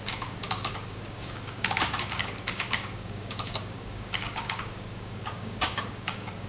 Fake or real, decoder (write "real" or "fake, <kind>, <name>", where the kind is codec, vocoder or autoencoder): fake, codec, DAC